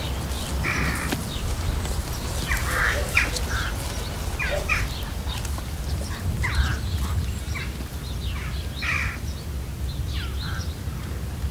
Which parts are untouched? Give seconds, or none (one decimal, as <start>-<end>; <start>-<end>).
0.0-2.6; 3.2-11.5

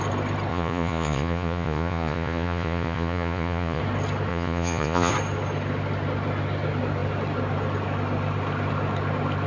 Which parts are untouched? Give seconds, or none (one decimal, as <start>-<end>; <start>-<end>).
0.0-0.5; 3.8-4.3; 5.1-9.5

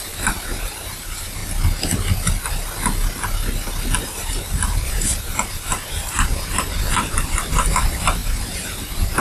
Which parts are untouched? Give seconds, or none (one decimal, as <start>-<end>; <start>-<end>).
1.4-4.0

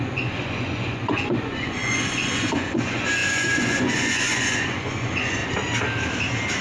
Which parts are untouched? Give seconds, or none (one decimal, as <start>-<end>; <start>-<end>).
5.4-6.6

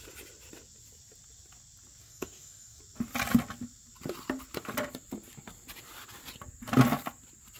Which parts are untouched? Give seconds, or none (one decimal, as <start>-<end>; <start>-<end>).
0.0-2.0; 2.8-7.6

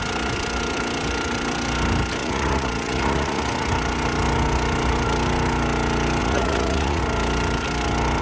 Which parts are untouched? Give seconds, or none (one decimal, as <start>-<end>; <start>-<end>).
0.0-2.2; 3.7-6.2; 7.0-8.2

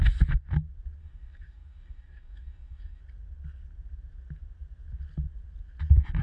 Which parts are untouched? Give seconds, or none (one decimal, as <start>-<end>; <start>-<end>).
0.0-1.0; 3.0-6.2